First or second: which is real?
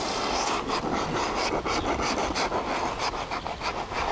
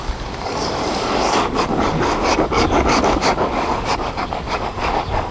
first